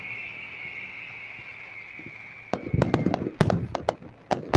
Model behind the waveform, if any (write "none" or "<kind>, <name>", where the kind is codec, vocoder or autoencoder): none